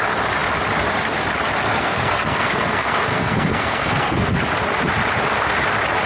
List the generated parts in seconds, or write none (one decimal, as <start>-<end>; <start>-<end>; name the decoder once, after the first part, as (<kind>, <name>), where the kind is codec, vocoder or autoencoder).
1.7-4.4 (codec, SNAC)